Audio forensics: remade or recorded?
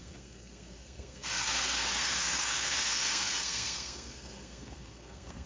remade